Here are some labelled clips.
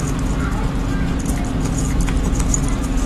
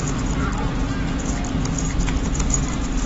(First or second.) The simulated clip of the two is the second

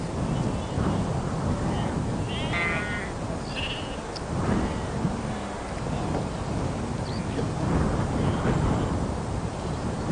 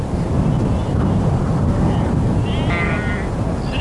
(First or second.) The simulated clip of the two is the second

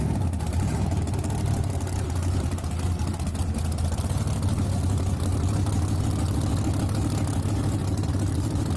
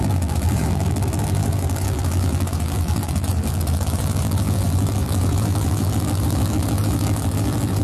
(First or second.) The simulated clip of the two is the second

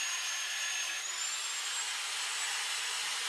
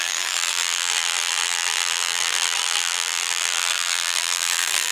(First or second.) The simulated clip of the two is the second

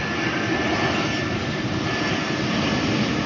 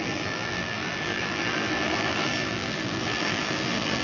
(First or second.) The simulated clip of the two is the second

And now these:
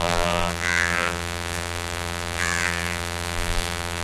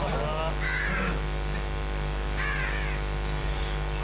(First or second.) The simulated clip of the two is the first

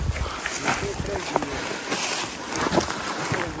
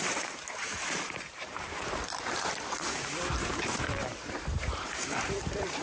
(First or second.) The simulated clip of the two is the second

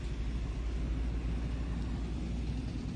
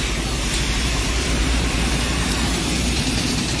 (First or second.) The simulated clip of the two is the second